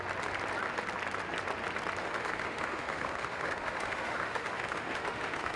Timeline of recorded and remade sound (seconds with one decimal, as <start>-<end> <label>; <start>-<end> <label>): 0.0-2.0 recorded; 2.0-5.6 remade